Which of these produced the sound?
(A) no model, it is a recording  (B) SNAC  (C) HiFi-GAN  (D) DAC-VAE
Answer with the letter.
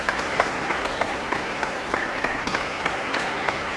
B